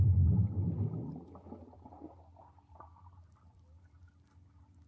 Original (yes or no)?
yes